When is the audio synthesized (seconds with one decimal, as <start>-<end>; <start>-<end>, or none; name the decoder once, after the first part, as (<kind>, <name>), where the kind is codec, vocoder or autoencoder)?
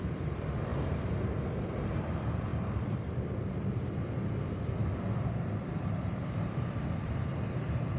0.0-8.0 (vocoder, BigVGAN v2)